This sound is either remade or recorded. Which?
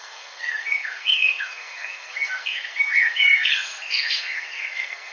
remade